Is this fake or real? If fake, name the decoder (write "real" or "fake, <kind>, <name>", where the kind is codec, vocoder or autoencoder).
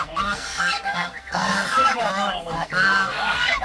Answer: fake, codec, SNAC